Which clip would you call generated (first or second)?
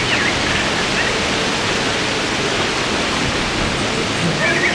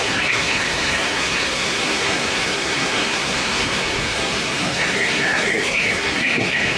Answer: second